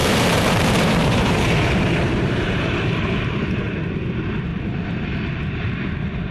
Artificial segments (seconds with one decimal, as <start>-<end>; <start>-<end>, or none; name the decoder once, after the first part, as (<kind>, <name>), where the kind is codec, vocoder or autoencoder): 0.0-3.8 (vocoder, BigVGAN v2); 4.5-5.7